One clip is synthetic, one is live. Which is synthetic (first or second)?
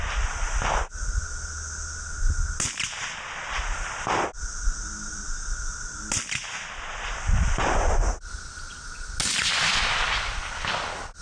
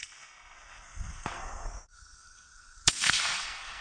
second